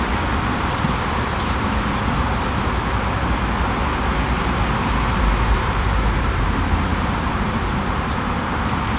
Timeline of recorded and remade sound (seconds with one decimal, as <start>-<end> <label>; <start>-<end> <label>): 0.0-3.9 recorded; 3.9-6.4 remade; 6.4-6.9 recorded; 6.9-8.2 remade; 8.2-9.0 recorded